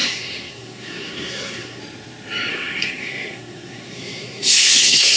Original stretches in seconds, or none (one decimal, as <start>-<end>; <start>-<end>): 1.8-2.5